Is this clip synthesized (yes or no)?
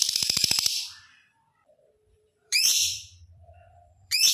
yes